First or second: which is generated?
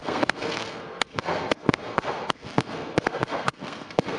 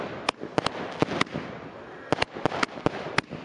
first